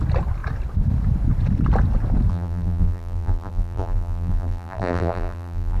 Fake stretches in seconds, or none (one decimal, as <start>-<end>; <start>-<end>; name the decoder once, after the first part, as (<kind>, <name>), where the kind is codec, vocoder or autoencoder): 2.3-5.8 (vocoder, BigVGAN v2)